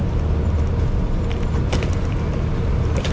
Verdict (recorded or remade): recorded